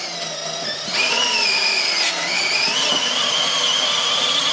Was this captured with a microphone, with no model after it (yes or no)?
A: yes